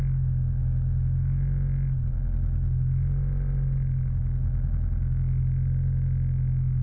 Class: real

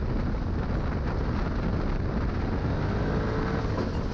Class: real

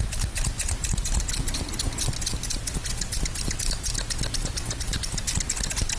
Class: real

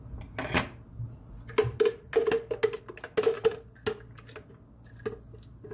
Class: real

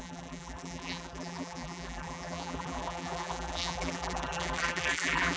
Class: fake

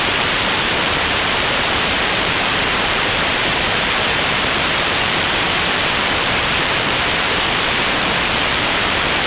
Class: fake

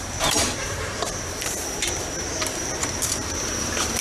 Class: fake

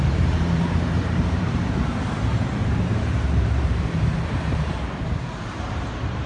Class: fake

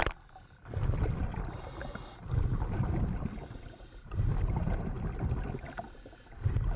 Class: real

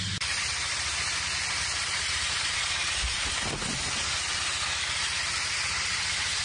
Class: real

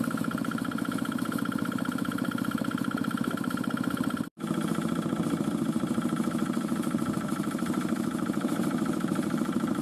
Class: fake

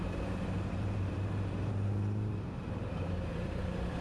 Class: fake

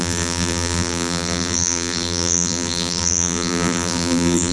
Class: fake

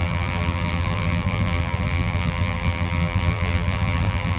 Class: fake